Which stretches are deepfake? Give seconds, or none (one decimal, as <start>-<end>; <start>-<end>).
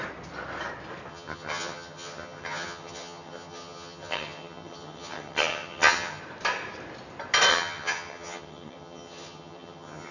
1.1-6.2; 7.5-10.1